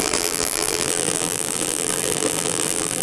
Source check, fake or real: fake